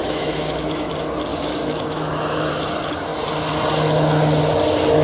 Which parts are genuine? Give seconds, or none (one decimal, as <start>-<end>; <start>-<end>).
0.9-1.3; 2.5-5.0